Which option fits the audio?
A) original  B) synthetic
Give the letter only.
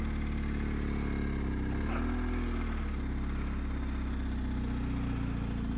A